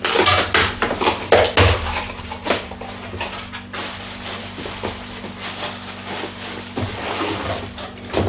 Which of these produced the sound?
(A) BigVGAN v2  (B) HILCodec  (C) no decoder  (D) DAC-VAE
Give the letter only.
C